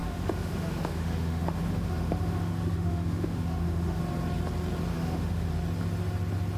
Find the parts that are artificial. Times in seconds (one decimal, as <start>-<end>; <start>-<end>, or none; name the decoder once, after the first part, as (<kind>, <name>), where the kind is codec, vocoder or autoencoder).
0.0-4.0 (autoencoder, DAC-VAE); 4.9-5.5